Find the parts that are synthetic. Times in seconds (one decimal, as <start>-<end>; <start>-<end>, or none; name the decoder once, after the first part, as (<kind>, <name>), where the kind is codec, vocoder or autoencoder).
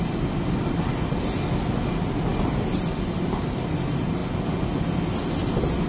none